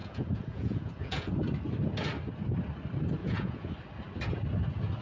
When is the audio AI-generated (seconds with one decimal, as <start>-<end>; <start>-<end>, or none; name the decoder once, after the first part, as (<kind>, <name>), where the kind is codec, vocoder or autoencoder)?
0.0-1.3 (vocoder, Vocos); 3.2-3.7